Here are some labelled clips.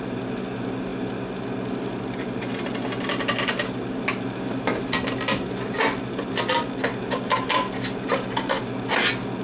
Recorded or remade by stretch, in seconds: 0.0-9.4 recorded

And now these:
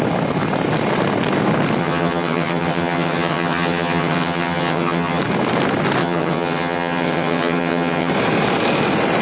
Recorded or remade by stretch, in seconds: 0.0-1.8 recorded; 1.8-5.2 remade; 5.2-6.0 recorded; 6.0-8.1 remade; 8.1-9.2 recorded

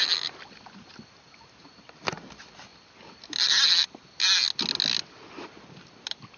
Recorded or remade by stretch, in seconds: 0.0-6.4 recorded

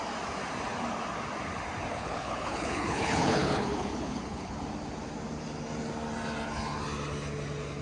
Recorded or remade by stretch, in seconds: 0.0-1.9 recorded; 1.9-4.6 remade; 4.6-7.8 recorded

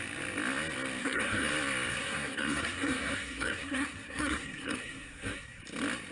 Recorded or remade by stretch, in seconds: 0.0-1.0 recorded; 1.0-1.5 remade; 1.5-1.9 recorded; 1.9-5.6 remade; 5.6-6.1 recorded